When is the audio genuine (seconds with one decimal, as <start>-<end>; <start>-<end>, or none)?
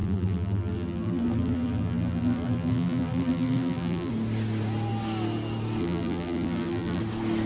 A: 4.1-5.8; 7.0-7.5